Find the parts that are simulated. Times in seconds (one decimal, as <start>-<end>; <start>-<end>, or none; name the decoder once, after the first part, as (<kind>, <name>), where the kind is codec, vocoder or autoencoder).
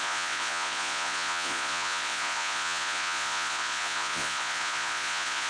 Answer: 0.0-5.5 (vocoder, Vocos)